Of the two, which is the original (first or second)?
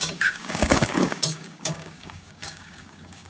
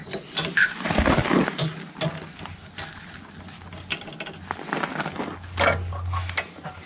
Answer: second